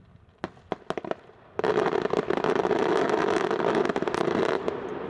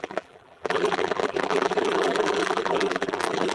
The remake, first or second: second